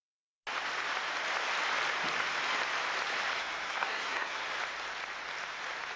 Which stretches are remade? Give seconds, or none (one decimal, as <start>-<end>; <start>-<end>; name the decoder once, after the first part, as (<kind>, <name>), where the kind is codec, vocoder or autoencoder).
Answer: 3.4-4.4 (codec, SNAC)